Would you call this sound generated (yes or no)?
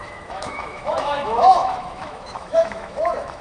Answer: yes